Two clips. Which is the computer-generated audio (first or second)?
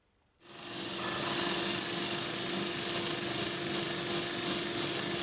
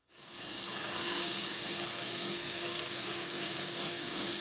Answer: second